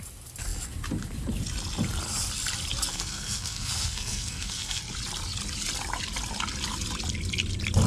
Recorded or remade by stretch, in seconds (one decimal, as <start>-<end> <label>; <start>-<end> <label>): 0.0-2.9 recorded; 2.9-4.8 remade; 4.8-7.9 recorded